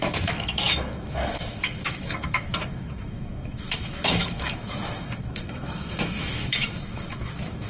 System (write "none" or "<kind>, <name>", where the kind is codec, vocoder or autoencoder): autoencoder, DAC-VAE